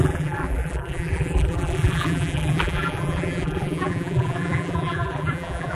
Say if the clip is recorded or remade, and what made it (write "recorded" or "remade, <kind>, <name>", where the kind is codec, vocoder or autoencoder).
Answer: remade, vocoder, BigVGAN v2